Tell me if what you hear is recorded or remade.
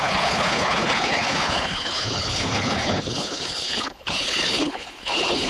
remade